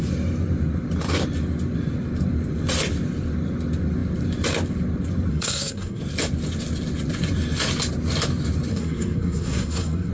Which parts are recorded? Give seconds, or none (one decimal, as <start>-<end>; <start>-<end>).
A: 0.0-5.3; 6.0-8.7